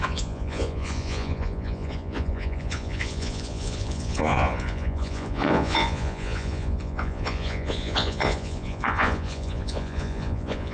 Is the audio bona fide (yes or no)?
no